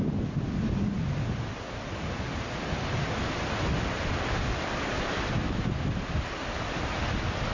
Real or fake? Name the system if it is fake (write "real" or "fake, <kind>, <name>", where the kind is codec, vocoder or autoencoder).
real